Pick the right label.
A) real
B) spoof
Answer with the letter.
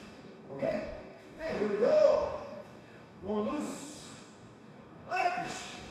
B